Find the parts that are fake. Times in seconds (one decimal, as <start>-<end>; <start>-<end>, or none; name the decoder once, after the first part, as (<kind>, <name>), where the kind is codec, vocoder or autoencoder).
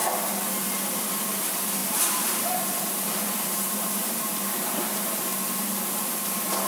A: 1.8-5.8 (vocoder, BigVGAN v2)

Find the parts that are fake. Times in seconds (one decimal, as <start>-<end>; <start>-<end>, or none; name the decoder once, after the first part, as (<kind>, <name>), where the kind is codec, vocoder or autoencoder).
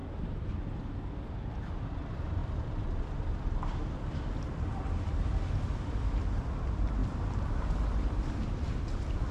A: 0.0-9.3 (vocoder, BigVGAN v2)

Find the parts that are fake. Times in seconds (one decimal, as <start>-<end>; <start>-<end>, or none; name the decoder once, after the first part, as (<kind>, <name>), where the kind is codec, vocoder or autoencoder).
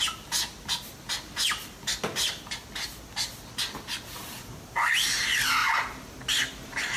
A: 3.1-4.2 (vocoder, BigVGAN v2); 5.6-7.0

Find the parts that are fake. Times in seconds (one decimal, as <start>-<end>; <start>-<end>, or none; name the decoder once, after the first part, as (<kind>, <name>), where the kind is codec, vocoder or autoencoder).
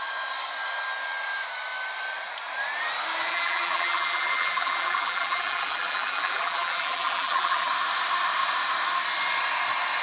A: 3.3-7.7 (vocoder, BigVGAN v2)